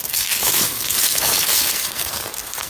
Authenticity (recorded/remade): remade